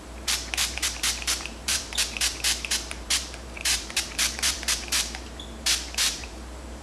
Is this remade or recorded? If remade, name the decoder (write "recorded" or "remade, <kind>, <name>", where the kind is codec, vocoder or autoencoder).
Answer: remade, vocoder, BigVGAN v2